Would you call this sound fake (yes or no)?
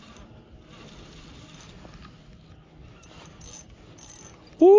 no